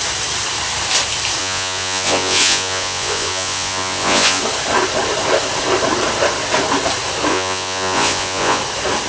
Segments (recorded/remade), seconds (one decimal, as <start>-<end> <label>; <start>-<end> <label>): 0.0-1.4 recorded; 1.4-4.4 remade; 4.4-7.3 recorded; 7.3-8.6 remade; 8.6-9.1 recorded